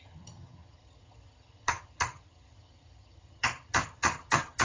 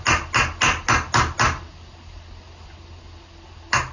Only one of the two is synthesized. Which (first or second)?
first